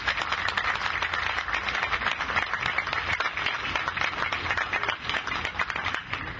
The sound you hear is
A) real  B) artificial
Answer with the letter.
A